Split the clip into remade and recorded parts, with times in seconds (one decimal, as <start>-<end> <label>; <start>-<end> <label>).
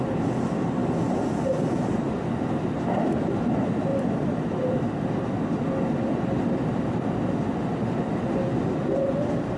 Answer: 0.0-9.6 recorded